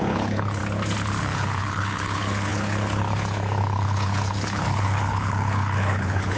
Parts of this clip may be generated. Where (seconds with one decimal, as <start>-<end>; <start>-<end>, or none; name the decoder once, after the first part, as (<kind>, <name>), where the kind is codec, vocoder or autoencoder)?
0.0-0.6 (codec, HILCodec); 1.2-6.4